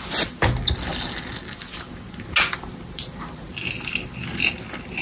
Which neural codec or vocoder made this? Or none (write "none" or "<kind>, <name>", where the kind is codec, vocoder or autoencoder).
none